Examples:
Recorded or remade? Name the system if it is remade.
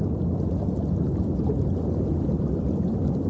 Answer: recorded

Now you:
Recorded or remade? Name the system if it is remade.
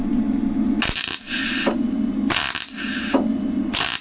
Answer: recorded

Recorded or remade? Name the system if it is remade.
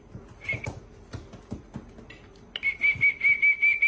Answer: recorded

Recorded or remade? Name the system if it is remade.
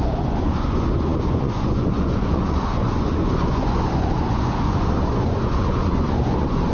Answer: remade, vocoder, Vocos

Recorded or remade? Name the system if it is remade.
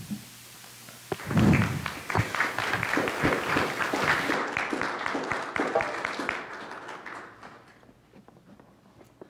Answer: recorded